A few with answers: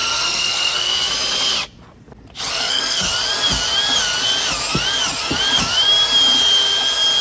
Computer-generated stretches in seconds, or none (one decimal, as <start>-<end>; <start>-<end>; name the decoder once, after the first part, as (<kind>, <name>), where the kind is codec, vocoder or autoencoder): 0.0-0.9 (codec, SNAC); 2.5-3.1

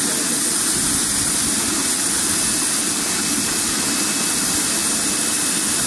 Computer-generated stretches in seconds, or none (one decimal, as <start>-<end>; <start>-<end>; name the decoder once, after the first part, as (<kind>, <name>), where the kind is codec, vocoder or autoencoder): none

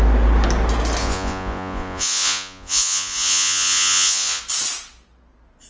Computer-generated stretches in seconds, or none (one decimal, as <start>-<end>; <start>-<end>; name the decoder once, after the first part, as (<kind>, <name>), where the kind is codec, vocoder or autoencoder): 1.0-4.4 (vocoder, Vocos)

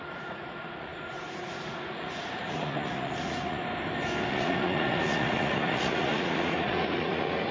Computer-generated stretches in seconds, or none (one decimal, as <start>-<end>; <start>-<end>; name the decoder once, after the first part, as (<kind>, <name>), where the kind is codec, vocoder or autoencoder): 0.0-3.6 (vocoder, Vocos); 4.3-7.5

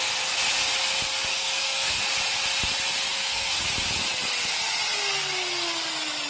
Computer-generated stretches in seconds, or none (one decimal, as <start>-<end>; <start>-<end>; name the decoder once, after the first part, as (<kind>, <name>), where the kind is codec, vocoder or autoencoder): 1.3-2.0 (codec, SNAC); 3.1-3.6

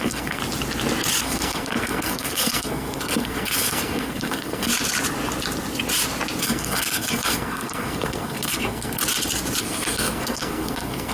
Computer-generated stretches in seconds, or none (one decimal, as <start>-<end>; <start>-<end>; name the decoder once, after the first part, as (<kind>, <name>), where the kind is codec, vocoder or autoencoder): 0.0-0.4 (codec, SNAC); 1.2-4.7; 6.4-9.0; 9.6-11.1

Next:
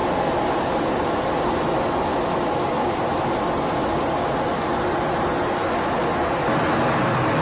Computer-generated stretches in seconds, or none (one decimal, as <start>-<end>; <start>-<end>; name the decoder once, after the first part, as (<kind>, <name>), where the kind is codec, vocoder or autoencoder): none